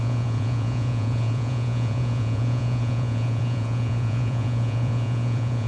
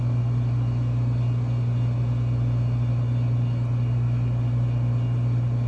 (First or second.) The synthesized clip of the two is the first